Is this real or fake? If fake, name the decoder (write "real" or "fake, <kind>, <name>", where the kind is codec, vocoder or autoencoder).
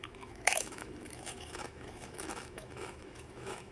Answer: fake, autoencoder, DAC-VAE